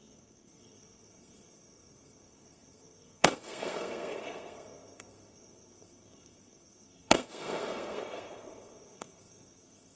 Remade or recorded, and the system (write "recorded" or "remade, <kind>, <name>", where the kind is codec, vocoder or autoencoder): remade, codec, SNAC